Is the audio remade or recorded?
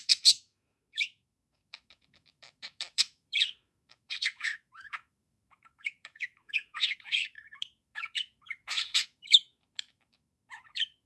remade